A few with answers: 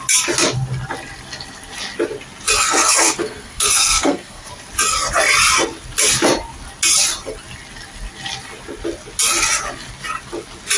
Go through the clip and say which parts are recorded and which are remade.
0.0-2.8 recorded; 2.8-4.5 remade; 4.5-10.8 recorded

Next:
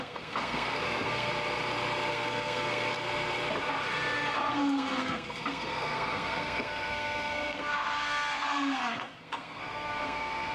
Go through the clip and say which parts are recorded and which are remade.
0.0-1.3 remade; 1.3-2.1 recorded; 2.1-2.9 remade; 2.9-4.5 recorded; 4.5-10.5 remade

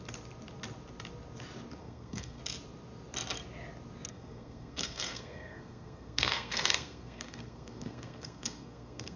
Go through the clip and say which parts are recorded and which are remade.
0.0-1.8 recorded; 1.8-2.4 remade; 2.4-4.1 recorded; 4.1-9.2 remade

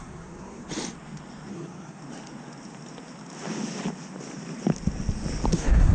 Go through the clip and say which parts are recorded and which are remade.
0.0-0.6 remade; 0.6-1.5 recorded; 1.5-2.0 remade; 2.0-5.5 recorded; 5.5-5.9 remade

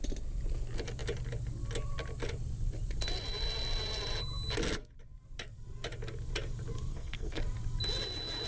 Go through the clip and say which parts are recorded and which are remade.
0.0-6.9 recorded; 6.9-7.4 remade; 7.4-8.5 recorded

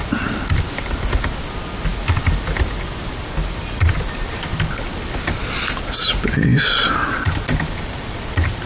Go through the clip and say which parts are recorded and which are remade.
0.0-8.7 recorded

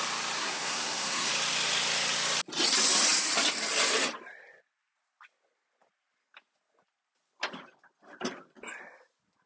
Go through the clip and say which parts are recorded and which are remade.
0.0-0.4 recorded; 0.4-1.3 remade; 1.3-9.5 recorded